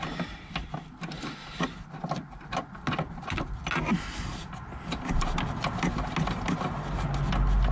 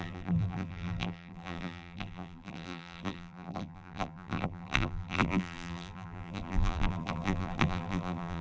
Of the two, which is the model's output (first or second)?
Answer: second